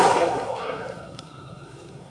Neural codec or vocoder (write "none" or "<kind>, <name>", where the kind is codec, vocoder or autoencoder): codec, SNAC